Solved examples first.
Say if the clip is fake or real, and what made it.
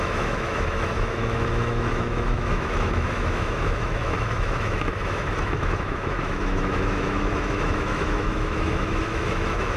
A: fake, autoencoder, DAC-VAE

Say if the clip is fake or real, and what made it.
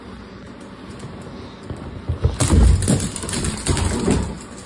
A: real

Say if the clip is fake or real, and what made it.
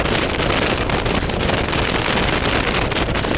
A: real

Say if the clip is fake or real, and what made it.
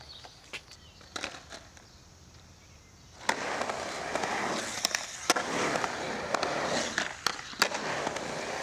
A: real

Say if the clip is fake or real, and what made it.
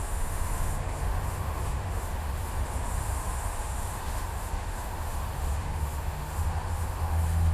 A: fake, autoencoder, DAC-VAE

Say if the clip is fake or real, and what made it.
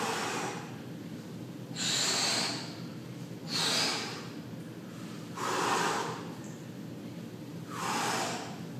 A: real